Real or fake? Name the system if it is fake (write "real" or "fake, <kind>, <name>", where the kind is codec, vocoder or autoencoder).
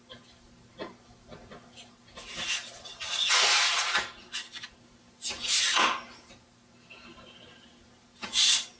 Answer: real